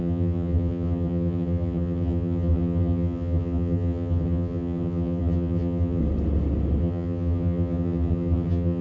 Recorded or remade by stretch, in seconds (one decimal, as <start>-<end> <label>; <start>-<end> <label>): 0.0-6.0 remade; 6.0-6.8 recorded; 6.8-8.8 remade

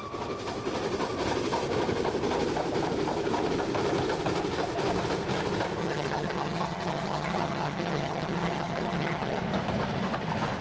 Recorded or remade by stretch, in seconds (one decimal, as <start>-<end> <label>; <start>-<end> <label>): 0.0-5.8 recorded; 5.8-9.4 remade; 9.4-10.6 recorded